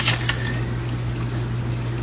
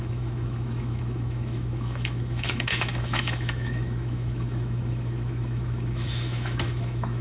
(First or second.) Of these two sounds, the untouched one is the first